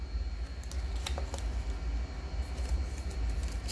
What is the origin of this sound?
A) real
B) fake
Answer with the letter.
A